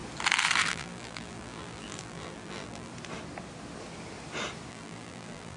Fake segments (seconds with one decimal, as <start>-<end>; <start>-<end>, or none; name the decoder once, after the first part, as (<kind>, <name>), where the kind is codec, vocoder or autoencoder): 0.7-2.9 (vocoder, BigVGAN v2); 4.7-5.6